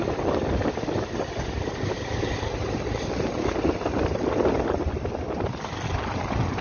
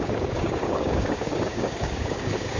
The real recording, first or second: first